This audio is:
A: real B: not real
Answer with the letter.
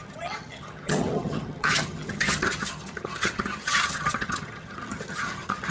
B